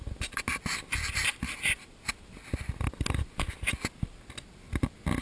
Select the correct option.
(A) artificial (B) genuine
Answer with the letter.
B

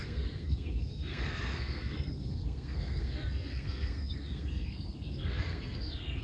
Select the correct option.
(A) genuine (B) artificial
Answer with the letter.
B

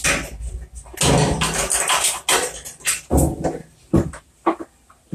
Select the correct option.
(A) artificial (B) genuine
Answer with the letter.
B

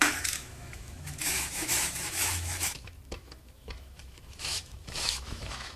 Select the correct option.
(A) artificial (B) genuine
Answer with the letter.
A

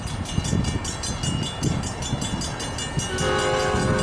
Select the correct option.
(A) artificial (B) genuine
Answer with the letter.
B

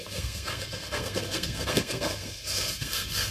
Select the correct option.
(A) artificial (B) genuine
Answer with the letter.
A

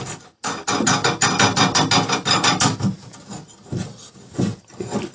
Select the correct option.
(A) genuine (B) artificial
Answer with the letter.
A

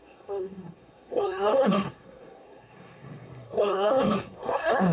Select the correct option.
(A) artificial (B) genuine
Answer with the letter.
A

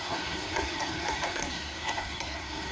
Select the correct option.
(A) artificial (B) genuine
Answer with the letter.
A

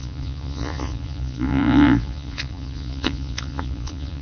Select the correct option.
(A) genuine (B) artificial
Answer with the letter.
B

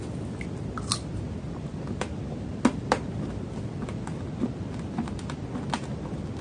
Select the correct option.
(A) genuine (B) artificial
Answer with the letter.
A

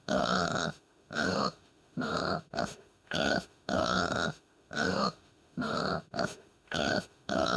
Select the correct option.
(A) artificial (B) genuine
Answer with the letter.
A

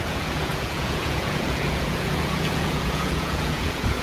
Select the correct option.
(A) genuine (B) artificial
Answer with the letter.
B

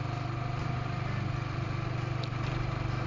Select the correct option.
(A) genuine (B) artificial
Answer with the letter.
A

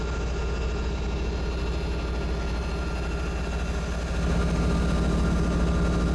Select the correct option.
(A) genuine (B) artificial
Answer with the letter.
A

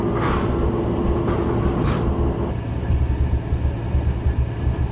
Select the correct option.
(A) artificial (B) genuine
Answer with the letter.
B